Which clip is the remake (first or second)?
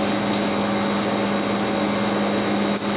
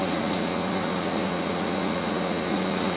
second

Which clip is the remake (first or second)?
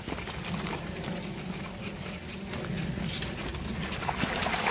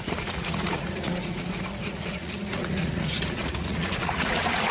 second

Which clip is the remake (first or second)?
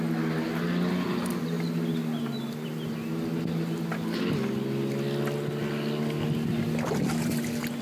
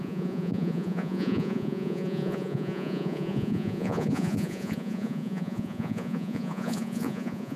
second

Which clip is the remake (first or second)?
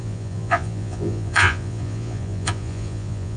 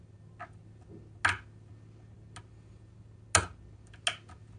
first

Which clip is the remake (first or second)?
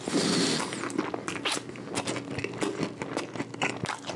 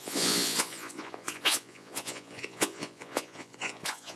second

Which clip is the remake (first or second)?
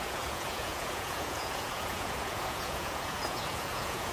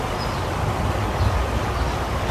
first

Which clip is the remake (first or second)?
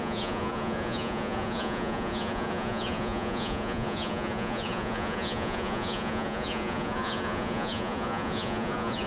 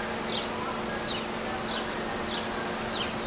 first